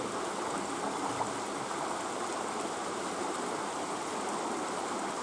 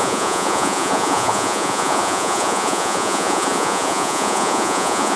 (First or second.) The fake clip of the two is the second